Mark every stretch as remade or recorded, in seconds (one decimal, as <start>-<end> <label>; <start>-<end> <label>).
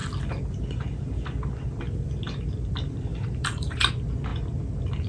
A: 0.0-3.1 recorded; 3.1-3.9 remade; 3.9-5.1 recorded